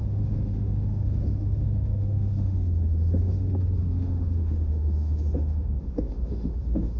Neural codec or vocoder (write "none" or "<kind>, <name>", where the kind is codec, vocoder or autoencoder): autoencoder, DAC-VAE